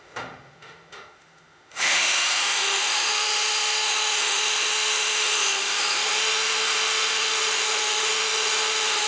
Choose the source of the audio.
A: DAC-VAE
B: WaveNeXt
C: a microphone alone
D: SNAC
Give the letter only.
A